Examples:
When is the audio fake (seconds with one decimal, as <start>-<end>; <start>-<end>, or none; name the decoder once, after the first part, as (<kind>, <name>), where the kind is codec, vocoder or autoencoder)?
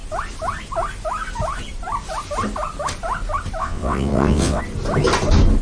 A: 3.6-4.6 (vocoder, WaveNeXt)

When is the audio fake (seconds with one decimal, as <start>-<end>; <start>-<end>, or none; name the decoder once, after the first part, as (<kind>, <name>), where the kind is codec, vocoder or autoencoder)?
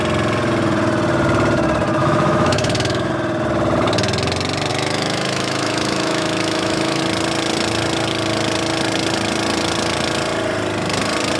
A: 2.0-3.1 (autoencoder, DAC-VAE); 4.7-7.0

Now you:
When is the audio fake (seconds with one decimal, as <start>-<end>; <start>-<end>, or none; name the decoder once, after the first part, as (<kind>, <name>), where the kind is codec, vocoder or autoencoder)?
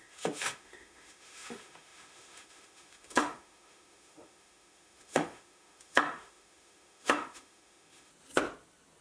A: 0.0-8.1 (autoencoder, DAC-VAE)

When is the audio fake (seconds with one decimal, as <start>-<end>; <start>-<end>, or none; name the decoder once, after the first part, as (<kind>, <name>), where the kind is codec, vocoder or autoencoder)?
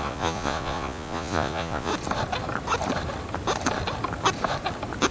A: 0.0-1.9 (vocoder, Vocos)